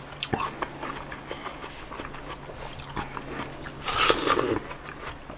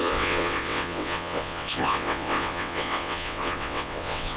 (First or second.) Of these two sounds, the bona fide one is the first